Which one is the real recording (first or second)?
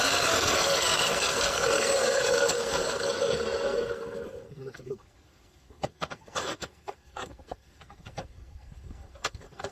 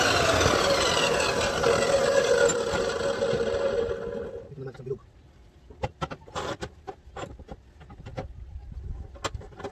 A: second